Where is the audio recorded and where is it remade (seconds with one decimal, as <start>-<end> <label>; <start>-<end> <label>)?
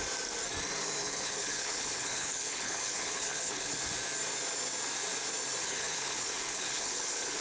0.0-1.0 recorded; 1.0-3.8 remade; 3.8-5.6 recorded; 5.6-7.4 remade